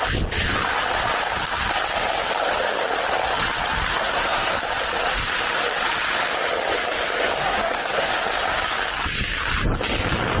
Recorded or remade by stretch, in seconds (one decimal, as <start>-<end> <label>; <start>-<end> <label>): 0.0-3.9 recorded; 3.9-4.6 remade; 4.6-7.4 recorded; 7.4-8.1 remade; 8.1-10.4 recorded